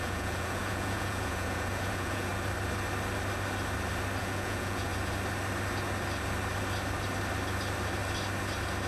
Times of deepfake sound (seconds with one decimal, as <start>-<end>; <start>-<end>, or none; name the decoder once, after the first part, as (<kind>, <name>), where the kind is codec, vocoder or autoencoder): 0.0-2.3 (vocoder, Vocos); 4.2-4.9